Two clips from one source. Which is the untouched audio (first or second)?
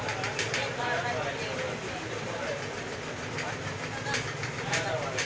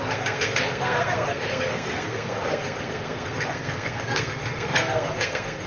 first